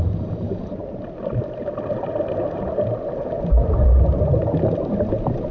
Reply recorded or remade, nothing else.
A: recorded